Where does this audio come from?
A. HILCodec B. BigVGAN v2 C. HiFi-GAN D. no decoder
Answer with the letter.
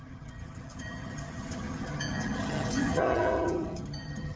C